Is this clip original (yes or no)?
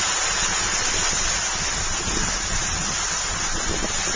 yes